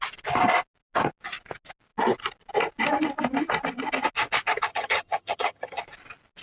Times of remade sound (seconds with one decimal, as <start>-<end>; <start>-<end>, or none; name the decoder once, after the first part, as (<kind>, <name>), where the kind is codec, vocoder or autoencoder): 4.7-5.8 (vocoder, HiFi-GAN)